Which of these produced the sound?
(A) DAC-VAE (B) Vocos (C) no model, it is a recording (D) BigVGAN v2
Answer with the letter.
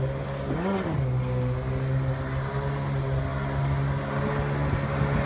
C